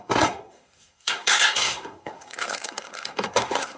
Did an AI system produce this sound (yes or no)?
yes